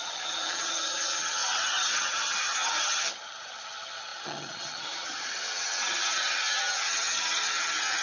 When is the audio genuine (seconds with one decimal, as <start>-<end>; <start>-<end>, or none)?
none